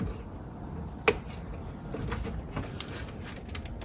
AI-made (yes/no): no